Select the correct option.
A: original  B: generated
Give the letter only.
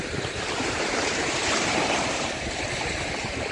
B